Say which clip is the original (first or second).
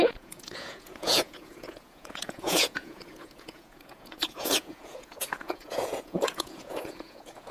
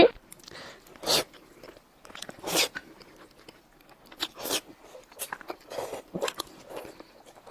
second